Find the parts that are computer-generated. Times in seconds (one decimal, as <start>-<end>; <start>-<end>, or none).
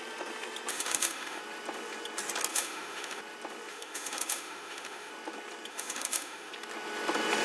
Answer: 0.7-1.4; 2.5-3.2; 3.7-5.1; 5.7-6.5